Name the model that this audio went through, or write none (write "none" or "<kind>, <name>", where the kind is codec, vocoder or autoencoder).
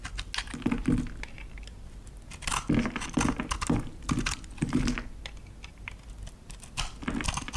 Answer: none